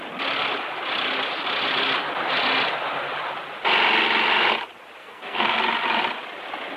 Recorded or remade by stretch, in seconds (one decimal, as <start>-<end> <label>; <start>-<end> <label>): 0.0-5.0 recorded; 5.0-5.6 remade; 5.6-6.8 recorded